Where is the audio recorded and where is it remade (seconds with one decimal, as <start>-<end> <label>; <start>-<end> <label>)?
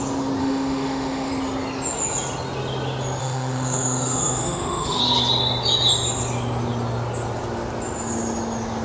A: 0.0-0.4 recorded; 0.4-1.3 remade; 1.3-3.2 recorded; 3.2-5.0 remade; 5.0-8.8 recorded